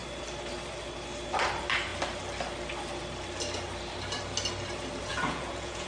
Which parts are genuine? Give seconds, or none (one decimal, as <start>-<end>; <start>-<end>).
0.0-5.1